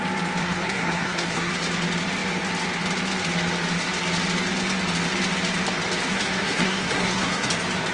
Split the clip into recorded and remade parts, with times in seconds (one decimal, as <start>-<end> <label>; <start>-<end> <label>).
0.0-0.4 recorded; 0.4-1.5 remade; 1.5-6.1 recorded; 6.1-7.5 remade; 7.5-7.9 recorded